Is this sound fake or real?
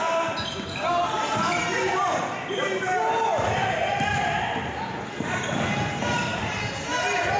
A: real